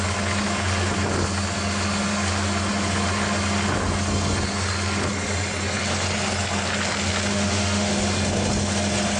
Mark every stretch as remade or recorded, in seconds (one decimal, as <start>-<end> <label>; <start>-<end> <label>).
0.0-7.3 recorded; 7.3-7.9 remade; 7.9-9.2 recorded